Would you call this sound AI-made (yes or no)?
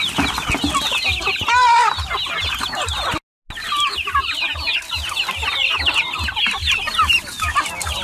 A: no